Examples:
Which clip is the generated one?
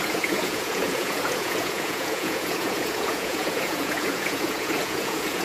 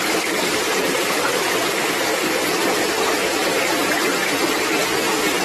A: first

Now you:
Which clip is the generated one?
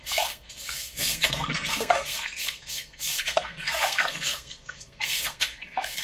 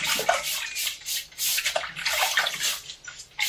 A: first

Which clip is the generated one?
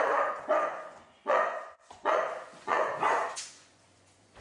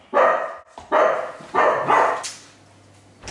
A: first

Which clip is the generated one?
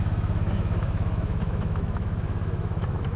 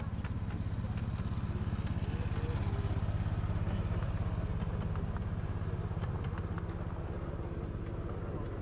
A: first